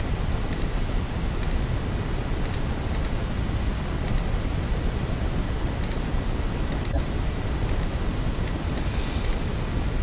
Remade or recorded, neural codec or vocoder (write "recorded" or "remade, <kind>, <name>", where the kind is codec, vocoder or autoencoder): recorded